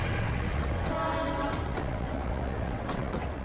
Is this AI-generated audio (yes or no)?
yes